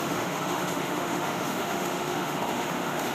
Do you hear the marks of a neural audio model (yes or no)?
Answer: yes